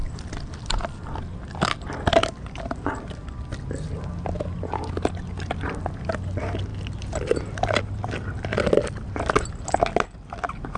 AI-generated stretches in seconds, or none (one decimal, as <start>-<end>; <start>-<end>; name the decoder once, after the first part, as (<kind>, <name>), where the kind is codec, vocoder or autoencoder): none